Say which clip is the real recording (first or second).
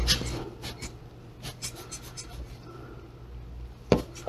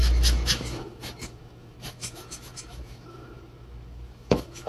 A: first